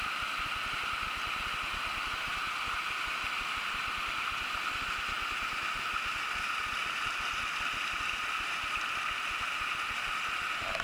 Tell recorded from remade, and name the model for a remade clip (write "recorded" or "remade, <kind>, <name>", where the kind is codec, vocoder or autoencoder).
recorded